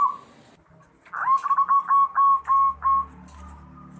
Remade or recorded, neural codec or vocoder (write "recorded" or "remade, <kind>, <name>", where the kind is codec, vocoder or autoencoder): recorded